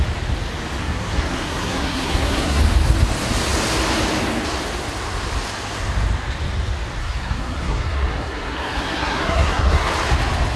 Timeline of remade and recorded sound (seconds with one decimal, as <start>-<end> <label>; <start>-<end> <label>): 0.0-0.8 recorded; 0.8-2.6 remade; 2.6-7.0 recorded; 7.0-9.9 remade; 9.9-10.6 recorded